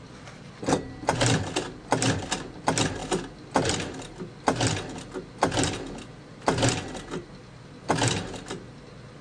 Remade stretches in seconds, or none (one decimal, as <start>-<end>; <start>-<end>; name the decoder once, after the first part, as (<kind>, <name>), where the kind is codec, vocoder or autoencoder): none